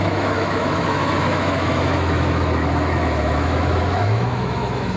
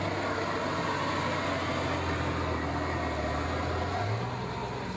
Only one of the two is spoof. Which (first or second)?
first